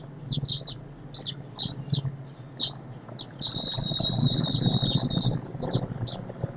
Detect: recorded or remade recorded